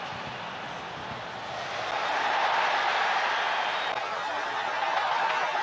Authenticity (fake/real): real